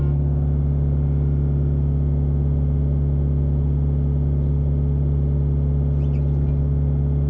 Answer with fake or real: real